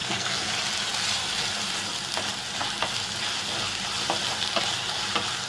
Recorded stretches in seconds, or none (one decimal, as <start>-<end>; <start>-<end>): 0.5-5.5